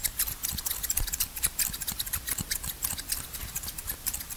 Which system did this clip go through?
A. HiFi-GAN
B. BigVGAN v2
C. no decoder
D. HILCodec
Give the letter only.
C